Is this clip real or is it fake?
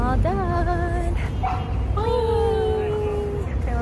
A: real